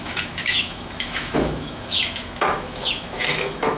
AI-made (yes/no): yes